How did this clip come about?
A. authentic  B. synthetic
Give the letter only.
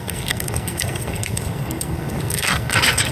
B